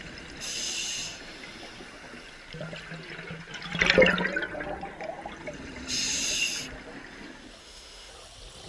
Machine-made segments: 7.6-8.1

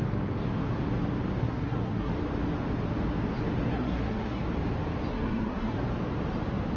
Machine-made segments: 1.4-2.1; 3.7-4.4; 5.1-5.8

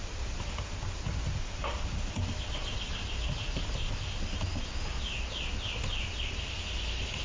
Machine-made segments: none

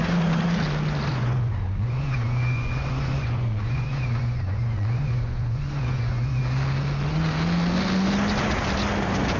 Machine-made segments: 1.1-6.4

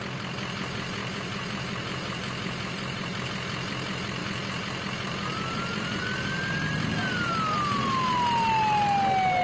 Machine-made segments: 1.0-3.3